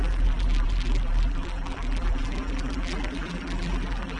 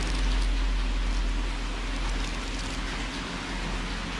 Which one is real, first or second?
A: second